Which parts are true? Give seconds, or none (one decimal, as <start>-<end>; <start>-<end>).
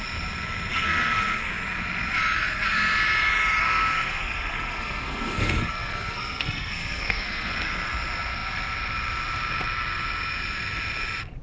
0.0-0.7; 1.5-3.6; 7.5-11.4